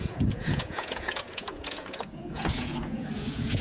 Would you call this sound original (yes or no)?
no